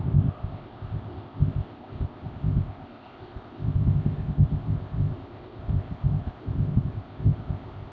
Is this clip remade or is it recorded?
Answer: remade